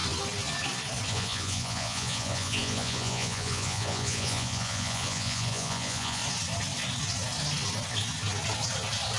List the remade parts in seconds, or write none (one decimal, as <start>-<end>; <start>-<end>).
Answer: 1.1-6.2